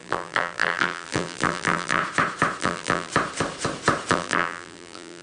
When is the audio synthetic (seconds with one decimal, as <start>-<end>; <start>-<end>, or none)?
0.0-2.0; 2.6-3.1; 4.1-5.2